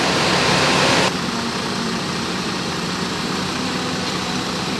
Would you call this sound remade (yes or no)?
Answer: yes